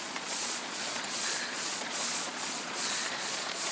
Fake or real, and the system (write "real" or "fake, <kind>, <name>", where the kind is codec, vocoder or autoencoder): fake, vocoder, Vocos